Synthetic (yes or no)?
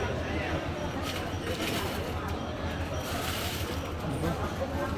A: yes